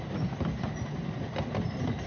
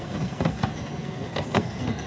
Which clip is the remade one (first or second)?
second